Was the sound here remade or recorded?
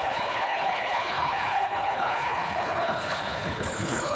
remade